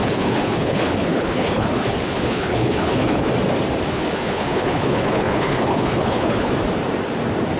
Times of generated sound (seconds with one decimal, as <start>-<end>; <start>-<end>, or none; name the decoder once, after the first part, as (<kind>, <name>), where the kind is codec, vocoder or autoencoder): 0.0-3.3 (codec, HILCodec); 3.9-6.5